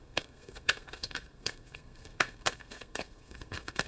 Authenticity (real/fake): fake